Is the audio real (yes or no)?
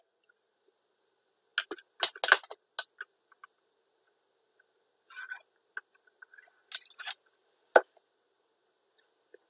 yes